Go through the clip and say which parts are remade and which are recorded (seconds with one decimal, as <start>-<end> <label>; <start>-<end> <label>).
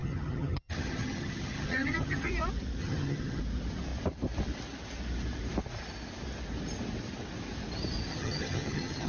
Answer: 0.0-2.3 remade; 2.3-2.8 recorded; 2.8-3.4 remade; 3.4-8.1 recorded; 8.1-9.1 remade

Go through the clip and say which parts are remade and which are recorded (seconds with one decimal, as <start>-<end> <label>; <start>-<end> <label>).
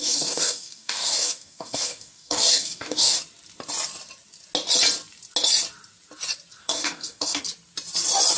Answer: 0.0-3.2 remade; 3.2-6.6 recorded; 6.6-7.4 remade; 7.4-8.4 recorded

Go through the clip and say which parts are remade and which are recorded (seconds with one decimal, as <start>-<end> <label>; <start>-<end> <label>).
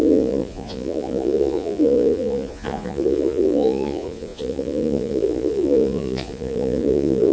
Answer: 0.0-7.3 remade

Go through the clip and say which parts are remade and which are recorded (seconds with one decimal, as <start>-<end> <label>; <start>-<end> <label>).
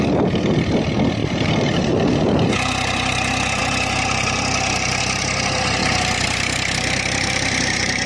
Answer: 0.0-1.2 recorded; 1.2-2.5 remade; 2.5-5.8 recorded; 5.8-8.1 remade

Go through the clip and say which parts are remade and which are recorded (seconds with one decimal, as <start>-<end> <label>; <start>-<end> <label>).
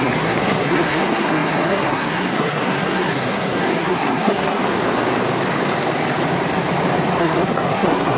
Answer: 0.0-4.6 remade; 4.6-7.2 recorded; 7.2-8.2 remade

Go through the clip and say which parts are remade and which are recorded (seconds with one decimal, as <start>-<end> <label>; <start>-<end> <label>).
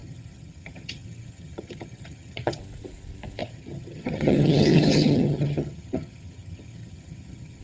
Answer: 0.0-2.6 remade; 2.6-3.4 recorded; 3.4-7.6 remade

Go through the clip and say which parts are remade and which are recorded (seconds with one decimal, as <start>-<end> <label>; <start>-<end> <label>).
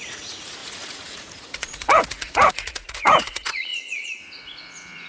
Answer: 0.0-5.1 remade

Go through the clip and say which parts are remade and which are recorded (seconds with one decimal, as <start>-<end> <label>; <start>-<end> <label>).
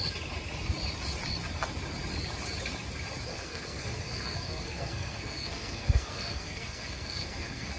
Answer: 0.0-3.3 recorded; 3.3-7.8 remade